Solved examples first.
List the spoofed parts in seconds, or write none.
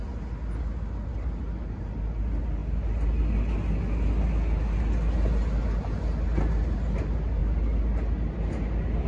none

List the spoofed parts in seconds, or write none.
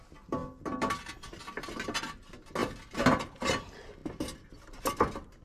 none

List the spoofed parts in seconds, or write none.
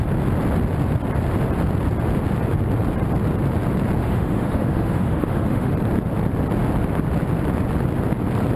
4.0-5.7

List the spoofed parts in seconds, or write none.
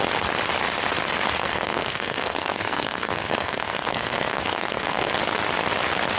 1.4-5.1